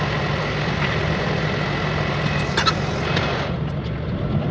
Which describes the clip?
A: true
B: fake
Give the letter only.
A